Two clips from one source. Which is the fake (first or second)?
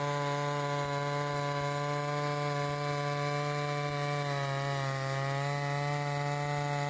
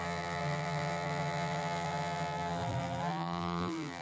second